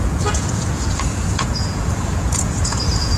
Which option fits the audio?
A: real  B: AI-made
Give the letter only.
B